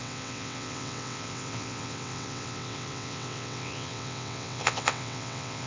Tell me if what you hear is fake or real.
fake